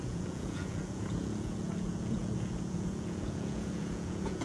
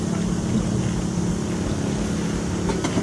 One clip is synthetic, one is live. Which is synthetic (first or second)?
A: first